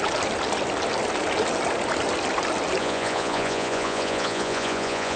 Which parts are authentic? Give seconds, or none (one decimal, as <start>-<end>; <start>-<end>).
0.0-2.8